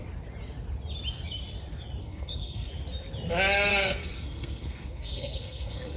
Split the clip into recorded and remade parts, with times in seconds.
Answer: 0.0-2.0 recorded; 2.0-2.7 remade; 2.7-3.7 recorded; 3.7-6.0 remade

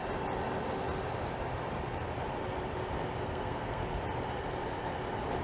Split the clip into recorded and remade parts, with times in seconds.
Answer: 0.0-3.2 recorded; 3.2-3.8 remade; 3.8-5.4 recorded

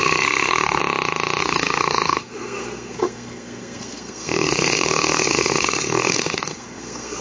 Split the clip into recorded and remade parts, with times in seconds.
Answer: 0.0-0.8 remade; 0.8-1.4 recorded; 1.4-7.2 remade

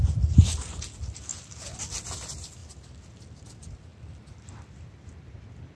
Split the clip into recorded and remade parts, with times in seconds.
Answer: 0.0-5.7 recorded

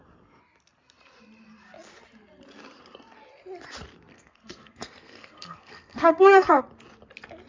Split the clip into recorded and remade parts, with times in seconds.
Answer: 0.0-4.1 recorded; 4.1-6.6 remade; 6.6-7.5 recorded

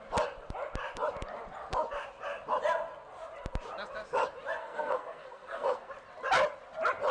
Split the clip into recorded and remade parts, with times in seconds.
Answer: 0.0-4.6 recorded; 4.6-5.9 remade; 5.9-7.1 recorded

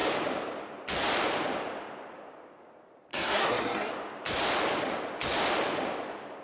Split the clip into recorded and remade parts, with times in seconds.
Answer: 0.0-3.1 recorded; 3.1-3.9 remade; 3.9-6.4 recorded